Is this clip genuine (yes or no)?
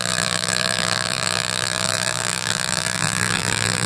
no